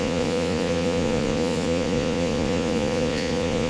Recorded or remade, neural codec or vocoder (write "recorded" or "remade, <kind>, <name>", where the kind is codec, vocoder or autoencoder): remade, vocoder, Vocos